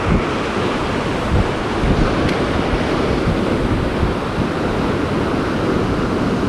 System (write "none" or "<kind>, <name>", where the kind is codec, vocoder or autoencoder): none